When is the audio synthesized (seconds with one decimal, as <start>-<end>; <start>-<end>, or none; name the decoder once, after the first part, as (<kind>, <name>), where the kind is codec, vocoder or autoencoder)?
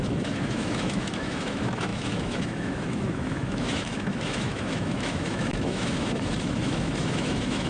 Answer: 0.0-7.7 (autoencoder, DAC-VAE)